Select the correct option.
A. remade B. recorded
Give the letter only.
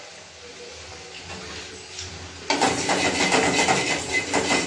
B